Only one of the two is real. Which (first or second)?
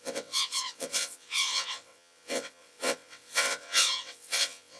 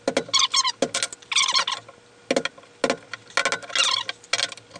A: second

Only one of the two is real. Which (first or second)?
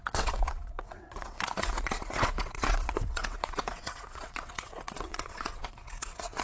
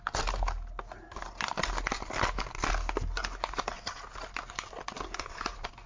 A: second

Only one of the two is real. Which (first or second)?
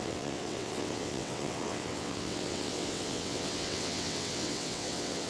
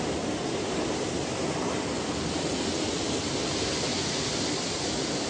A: second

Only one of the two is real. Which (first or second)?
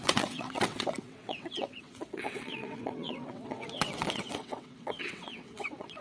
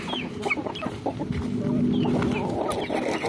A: second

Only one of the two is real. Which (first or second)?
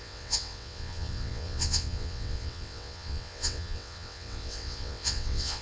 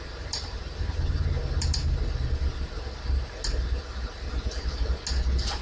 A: second